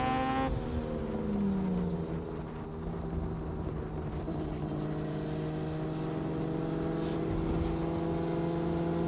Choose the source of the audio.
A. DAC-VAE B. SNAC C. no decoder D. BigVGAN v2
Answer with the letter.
C